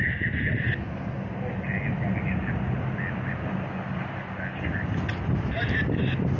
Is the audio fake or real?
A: real